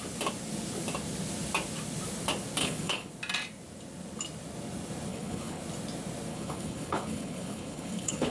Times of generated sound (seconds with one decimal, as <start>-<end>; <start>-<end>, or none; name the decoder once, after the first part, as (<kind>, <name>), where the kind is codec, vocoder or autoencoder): 2.6-3.1 (codec, HILCodec); 5.1-5.6; 6.3-8.3